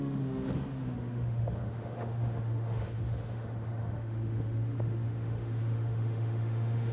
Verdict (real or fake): fake